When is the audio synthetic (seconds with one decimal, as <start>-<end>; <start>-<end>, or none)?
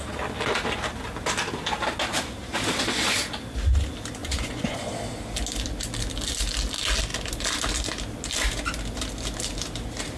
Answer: 4.2-4.9